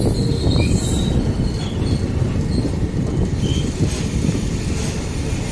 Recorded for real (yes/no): yes